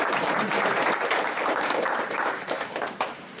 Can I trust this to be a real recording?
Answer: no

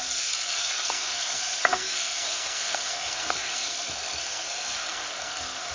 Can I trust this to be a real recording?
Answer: no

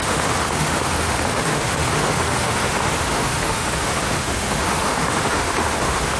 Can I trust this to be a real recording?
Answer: no